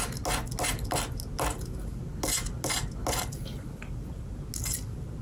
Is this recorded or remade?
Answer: recorded